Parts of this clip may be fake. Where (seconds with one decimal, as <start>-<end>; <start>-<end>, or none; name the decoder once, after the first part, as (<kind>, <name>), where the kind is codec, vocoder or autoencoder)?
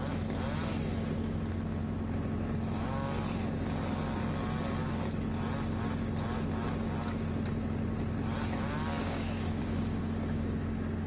9.0-11.1 (codec, DAC)